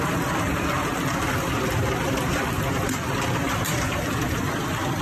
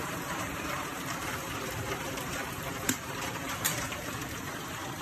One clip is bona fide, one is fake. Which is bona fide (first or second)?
first